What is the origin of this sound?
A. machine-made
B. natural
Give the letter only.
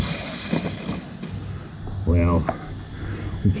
B